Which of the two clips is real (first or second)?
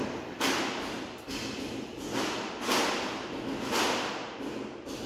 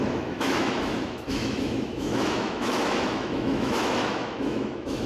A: first